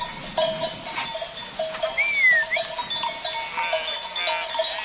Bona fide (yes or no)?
yes